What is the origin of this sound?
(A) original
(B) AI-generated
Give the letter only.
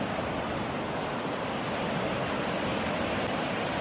A